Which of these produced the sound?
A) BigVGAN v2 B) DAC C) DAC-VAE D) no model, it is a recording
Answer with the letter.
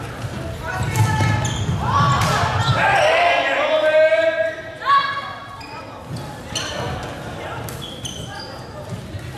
D